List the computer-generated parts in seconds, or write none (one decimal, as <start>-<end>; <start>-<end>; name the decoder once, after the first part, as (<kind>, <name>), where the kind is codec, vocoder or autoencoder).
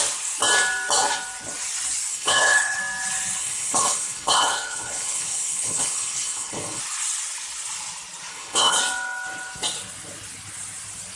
2.1-2.8 (codec, HILCodec); 3.4-6.8; 8.3-8.8